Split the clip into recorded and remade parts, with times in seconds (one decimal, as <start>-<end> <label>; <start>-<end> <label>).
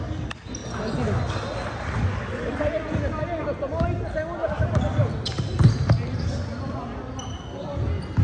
0.0-8.2 recorded